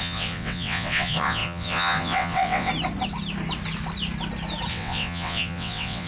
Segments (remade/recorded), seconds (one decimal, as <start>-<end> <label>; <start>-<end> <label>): 0.0-2.7 remade; 2.7-4.7 recorded; 4.7-6.1 remade